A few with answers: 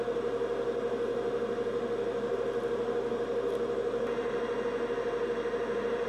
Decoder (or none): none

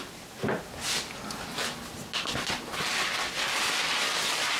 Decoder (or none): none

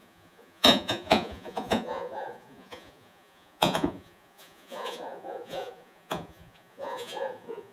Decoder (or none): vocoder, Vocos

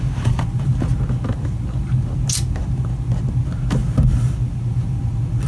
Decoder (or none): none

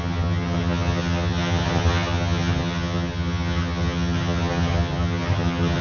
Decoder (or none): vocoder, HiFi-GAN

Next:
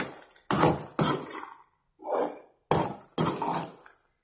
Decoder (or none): none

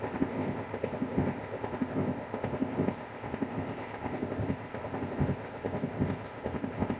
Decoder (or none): codec, ZipCodec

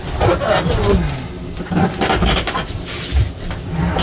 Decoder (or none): none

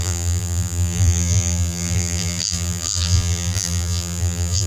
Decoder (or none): vocoder, BigVGAN v2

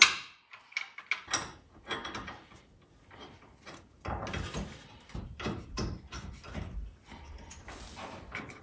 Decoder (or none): none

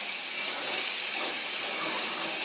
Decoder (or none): codec, DAC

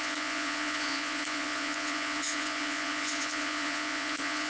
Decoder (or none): vocoder, Vocos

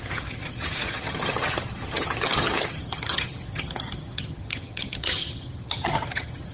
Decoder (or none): vocoder, HiFi-GAN